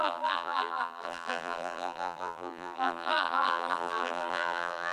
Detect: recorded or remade remade